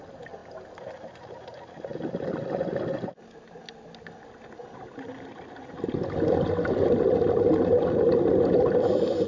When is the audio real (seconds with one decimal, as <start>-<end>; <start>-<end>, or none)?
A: 0.0-9.3